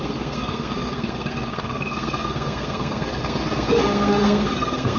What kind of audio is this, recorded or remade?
remade